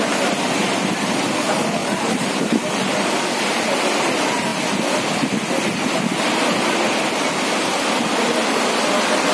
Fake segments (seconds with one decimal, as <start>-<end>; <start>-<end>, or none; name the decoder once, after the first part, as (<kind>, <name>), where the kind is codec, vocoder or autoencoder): 1.8-2.5 (vocoder, BigVGAN v2)